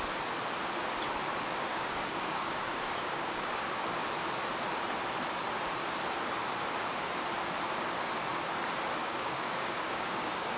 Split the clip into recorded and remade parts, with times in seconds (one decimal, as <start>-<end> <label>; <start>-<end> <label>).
0.0-1.7 recorded; 1.7-3.8 remade; 3.8-9.0 recorded; 9.0-10.6 remade